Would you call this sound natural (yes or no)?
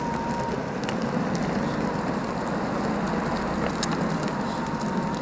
yes